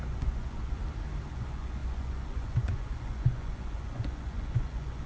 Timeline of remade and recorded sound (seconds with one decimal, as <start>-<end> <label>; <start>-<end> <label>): 0.0-0.8 remade; 0.8-1.3 recorded; 1.3-5.1 remade